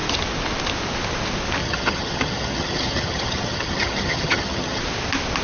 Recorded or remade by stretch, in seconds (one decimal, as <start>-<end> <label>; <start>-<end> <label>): 0.0-1.6 recorded; 1.6-4.8 remade; 4.8-5.4 recorded